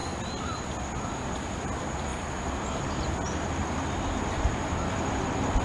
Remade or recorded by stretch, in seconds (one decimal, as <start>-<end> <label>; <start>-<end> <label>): 0.0-2.1 recorded; 2.1-3.0 remade; 3.0-5.6 recorded